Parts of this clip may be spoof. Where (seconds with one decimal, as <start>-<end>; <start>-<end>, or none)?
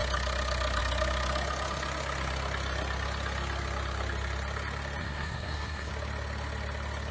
5.0-5.9